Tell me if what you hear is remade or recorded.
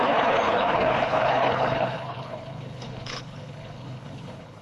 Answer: remade